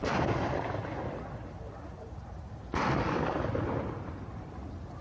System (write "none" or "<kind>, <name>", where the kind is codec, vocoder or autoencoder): none